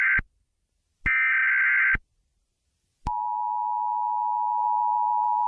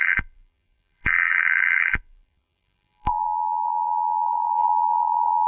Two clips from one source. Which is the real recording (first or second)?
first